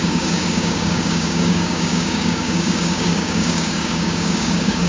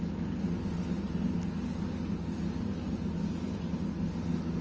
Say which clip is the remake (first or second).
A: first